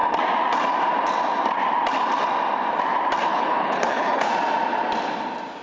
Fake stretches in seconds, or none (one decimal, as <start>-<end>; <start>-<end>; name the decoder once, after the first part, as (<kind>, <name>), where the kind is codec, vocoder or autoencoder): 3.3-4.3 (codec, HILCodec)